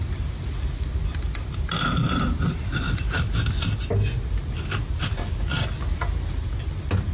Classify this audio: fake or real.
real